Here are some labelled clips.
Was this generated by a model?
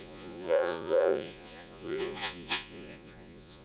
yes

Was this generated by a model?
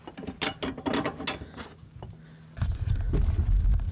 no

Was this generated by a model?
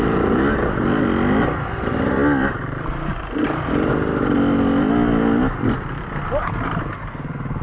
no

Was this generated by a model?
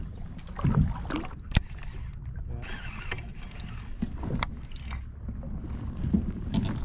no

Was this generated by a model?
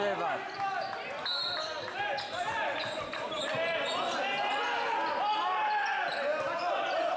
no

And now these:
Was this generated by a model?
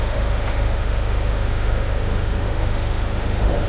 yes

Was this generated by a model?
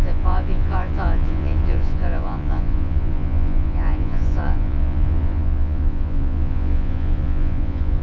yes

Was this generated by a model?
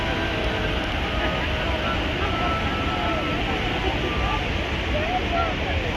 no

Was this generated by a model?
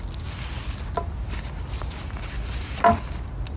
no